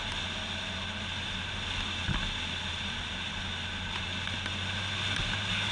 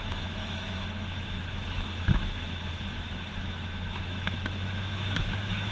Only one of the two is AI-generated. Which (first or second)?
second